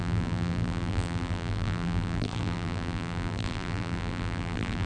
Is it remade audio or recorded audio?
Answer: remade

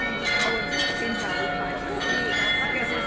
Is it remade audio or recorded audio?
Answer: recorded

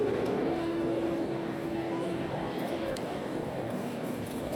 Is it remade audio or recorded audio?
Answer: remade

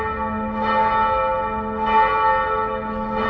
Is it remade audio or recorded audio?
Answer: recorded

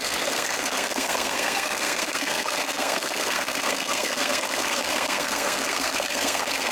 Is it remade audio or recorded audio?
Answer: remade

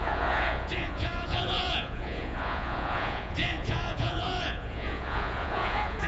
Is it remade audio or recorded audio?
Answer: remade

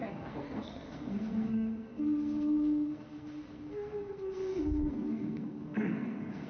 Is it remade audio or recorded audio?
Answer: remade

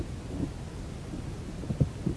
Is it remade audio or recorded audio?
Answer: recorded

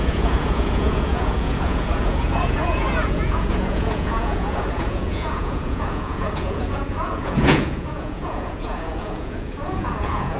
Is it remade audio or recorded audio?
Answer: remade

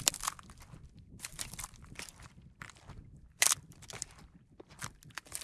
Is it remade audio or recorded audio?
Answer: remade